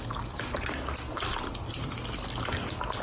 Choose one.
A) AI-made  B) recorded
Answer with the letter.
B